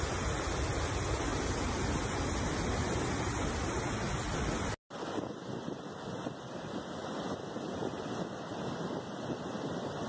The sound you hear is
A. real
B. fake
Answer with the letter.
A